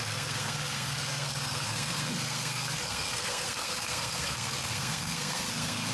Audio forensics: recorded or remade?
remade